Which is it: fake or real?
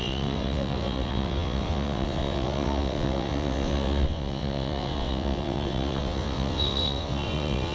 fake